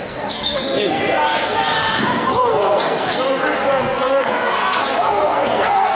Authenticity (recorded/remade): remade